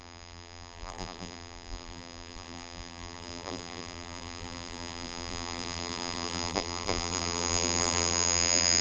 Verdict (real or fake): fake